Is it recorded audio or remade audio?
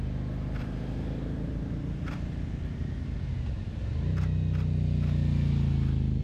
recorded